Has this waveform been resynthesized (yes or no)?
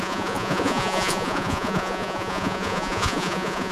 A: yes